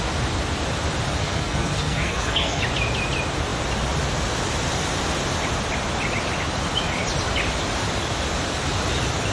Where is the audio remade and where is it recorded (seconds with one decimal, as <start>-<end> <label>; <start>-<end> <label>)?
0.0-1.2 recorded; 1.2-2.6 remade; 2.6-9.3 recorded